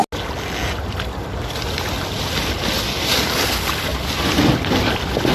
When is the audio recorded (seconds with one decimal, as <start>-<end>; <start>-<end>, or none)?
0.0-5.3